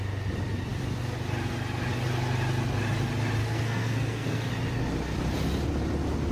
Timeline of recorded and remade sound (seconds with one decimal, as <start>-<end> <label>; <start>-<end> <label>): 0.0-3.4 recorded; 3.4-4.5 remade; 4.5-6.3 recorded